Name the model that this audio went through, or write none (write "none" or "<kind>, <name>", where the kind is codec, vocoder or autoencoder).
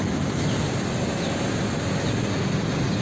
none